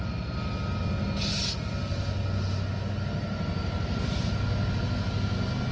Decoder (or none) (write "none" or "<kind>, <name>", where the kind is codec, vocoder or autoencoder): none